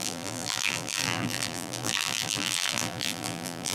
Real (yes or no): no